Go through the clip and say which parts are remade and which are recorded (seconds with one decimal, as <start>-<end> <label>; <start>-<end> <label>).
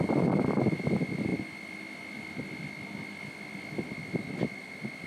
0.0-5.1 recorded